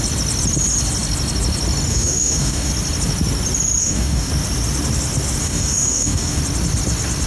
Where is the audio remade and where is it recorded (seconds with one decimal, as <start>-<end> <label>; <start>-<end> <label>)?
0.0-1.9 recorded; 1.9-2.7 remade; 2.7-3.8 recorded; 3.8-4.3 remade; 4.3-5.4 recorded; 5.4-6.4 remade; 6.4-7.3 recorded